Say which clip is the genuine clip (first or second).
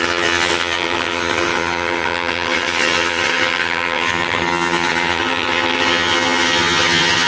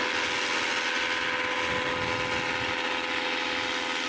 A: second